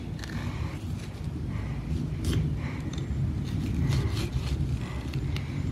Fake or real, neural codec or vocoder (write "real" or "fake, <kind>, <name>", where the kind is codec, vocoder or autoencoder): real